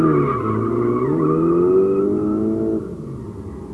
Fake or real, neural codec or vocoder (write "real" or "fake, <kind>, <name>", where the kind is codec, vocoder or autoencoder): real